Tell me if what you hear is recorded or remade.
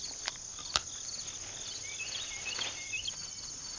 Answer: recorded